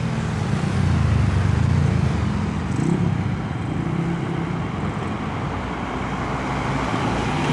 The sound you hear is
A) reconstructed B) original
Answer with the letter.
B